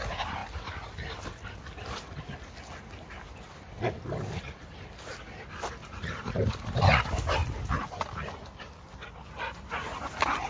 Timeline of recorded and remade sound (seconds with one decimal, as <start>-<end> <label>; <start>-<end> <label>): 0.0-10.5 recorded

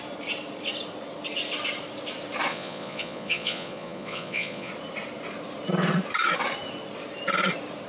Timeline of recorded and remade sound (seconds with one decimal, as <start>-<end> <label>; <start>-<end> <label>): 0.0-2.5 recorded; 2.5-4.7 remade; 4.7-7.9 recorded

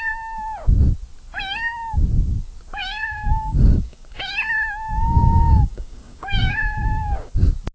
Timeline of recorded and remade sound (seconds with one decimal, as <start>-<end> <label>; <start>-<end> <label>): 0.0-2.8 recorded; 2.8-4.3 remade; 4.3-5.0 recorded; 5.0-7.3 remade; 7.3-7.7 recorded

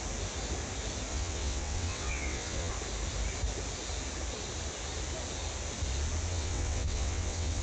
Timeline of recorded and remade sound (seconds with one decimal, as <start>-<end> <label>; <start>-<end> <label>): 0.0-1.1 recorded; 1.1-2.7 remade; 2.7-6.3 recorded; 6.3-7.6 remade